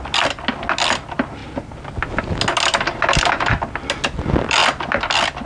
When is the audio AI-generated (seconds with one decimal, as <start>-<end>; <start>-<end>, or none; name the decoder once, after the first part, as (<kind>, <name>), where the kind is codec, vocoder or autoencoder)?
none